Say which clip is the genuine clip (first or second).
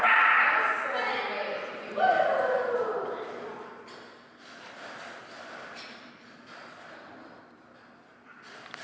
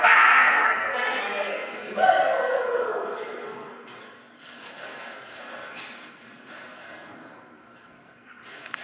first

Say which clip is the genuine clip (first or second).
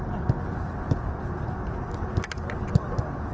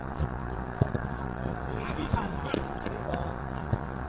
first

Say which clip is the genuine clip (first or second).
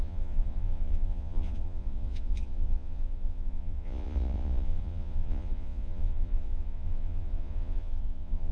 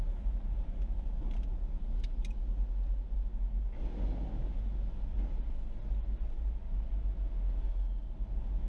second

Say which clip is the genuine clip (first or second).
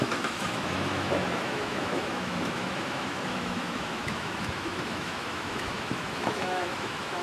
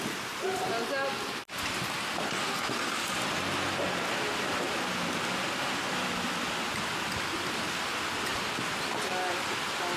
second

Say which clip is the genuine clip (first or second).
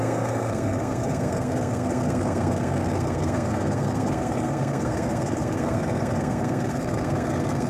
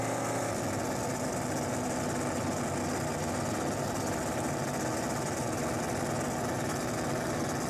second